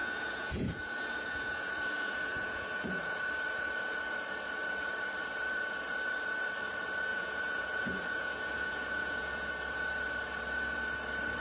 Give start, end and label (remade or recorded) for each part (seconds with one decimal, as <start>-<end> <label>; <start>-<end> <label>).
0.0-3.2 remade; 3.2-7.1 recorded; 7.1-9.5 remade; 9.5-11.4 recorded